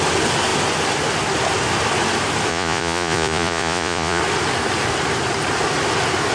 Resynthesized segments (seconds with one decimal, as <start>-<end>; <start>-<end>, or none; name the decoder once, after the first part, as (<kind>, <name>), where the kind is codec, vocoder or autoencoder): 2.5-4.2 (vocoder, Vocos)